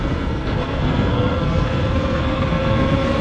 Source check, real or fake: fake